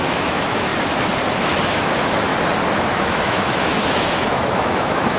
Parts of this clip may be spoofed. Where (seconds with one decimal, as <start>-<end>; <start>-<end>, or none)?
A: 0.0-0.7; 1.7-2.3; 2.9-5.2